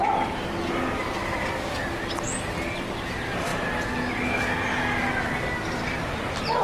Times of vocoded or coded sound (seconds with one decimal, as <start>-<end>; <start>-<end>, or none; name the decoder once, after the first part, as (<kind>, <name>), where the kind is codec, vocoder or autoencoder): none